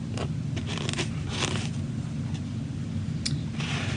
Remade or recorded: recorded